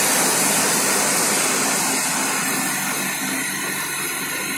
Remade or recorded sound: recorded